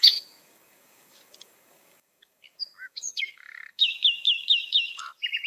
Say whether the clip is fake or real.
fake